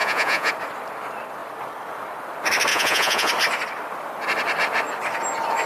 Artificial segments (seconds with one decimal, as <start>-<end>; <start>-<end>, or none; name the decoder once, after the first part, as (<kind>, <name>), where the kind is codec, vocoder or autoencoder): 0.0-0.5 (vocoder, Vocos); 2.7-3.3